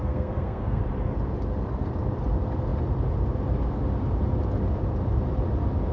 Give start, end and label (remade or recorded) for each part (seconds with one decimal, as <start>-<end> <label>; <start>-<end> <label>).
0.0-0.8 remade; 0.8-5.9 recorded